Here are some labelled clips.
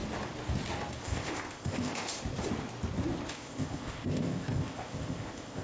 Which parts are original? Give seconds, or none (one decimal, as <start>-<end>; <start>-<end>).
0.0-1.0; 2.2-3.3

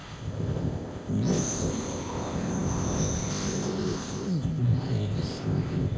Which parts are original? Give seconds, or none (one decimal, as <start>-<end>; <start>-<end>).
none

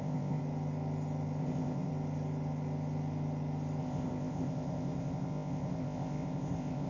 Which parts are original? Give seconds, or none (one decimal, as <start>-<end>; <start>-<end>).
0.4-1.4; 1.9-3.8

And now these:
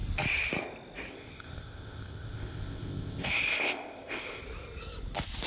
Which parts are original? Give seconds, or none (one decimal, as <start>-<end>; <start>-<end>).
0.0-1.1; 4.4-5.5